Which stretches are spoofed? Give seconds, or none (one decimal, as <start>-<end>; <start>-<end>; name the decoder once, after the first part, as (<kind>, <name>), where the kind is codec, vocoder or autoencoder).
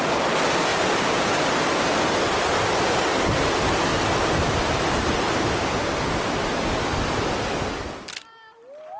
0.7-1.6 (vocoder, BigVGAN v2); 3.9-5.4